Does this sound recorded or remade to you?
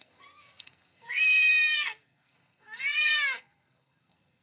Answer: remade